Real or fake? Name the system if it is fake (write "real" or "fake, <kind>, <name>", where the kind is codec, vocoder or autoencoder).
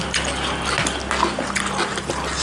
real